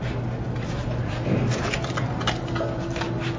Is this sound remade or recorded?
recorded